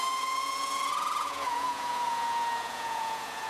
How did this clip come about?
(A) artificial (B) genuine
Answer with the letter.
A